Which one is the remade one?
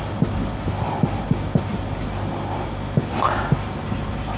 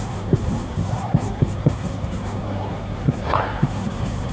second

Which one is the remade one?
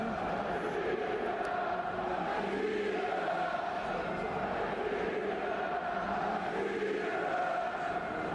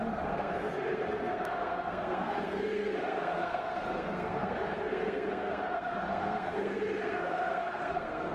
second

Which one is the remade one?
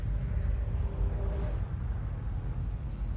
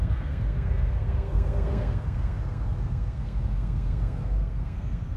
second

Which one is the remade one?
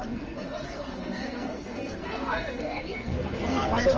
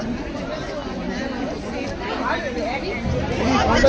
first